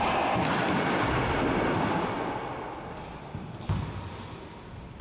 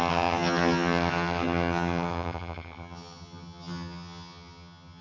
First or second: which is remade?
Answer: second